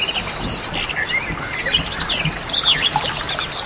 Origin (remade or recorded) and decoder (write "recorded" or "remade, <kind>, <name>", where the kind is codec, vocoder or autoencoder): recorded